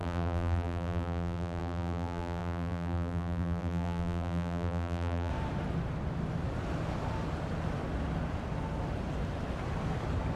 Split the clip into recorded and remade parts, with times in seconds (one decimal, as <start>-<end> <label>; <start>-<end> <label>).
0.0-5.3 remade; 5.3-10.4 recorded